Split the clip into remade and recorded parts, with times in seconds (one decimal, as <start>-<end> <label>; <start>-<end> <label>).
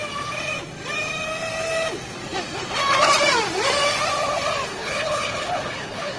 0.0-4.7 recorded; 4.7-6.2 remade